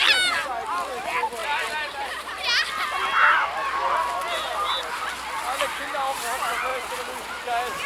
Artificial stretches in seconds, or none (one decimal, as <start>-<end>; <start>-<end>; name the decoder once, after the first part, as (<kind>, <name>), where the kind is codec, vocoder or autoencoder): 1.4-2.4 (vocoder, BigVGAN v2)